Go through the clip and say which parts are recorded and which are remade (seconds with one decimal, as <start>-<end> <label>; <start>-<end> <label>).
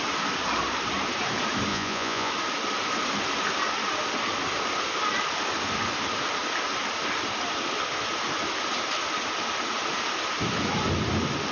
0.0-1.7 recorded; 1.7-2.3 remade; 2.3-11.5 recorded